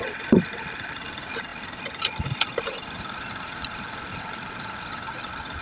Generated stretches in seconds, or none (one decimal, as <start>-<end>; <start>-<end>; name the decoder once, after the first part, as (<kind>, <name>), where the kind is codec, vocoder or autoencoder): none